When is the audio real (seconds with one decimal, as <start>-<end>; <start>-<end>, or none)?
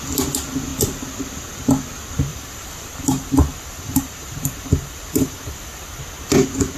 0.0-2.3; 6.0-6.8